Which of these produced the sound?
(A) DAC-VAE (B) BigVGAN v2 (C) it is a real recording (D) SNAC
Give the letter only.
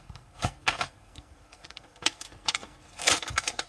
D